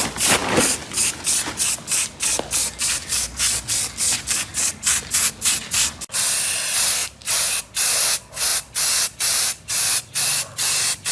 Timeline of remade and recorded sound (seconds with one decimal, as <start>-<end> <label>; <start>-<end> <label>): 0.0-7.0 recorded; 7.0-7.5 remade; 7.5-11.1 recorded